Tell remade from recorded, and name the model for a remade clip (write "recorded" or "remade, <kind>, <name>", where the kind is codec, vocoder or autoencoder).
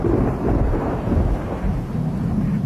remade, vocoder, BigVGAN v2